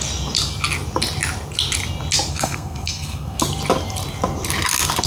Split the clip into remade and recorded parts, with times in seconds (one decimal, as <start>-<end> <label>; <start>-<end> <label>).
0.0-2.3 recorded; 2.3-3.4 remade; 3.4-5.1 recorded